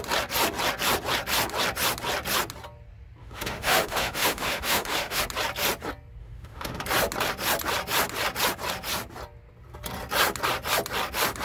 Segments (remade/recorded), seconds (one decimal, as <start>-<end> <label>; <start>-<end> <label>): 0.0-3.2 recorded; 3.2-5.2 remade; 5.2-6.2 recorded; 6.2-6.8 remade; 6.8-11.4 recorded